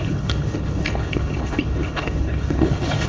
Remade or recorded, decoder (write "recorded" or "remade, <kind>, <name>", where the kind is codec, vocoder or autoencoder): remade, codec, HILCodec